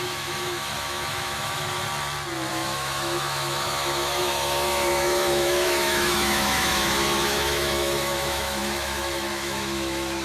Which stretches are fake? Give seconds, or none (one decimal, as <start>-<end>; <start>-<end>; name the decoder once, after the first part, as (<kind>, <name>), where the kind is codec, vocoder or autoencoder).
0.0-1.8 (autoencoder, DAC-VAE); 2.5-10.2